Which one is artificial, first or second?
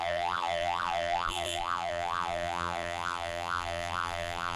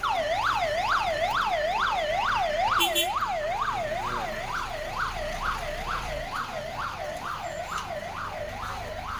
first